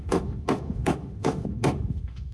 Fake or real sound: fake